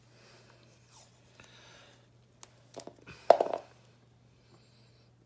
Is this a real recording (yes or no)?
yes